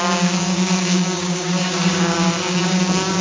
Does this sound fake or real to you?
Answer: fake